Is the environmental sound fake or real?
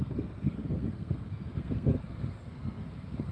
fake